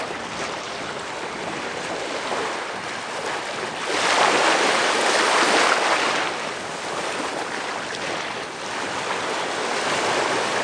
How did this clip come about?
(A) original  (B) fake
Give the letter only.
A